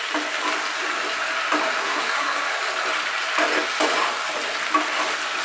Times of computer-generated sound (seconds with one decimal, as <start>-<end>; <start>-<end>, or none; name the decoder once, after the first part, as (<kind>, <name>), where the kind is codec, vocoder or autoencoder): 1.8-2.6 (codec, SNAC)